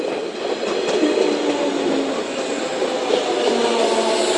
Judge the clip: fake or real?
real